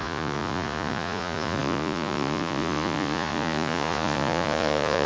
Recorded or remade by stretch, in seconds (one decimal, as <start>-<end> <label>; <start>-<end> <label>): 0.0-5.1 remade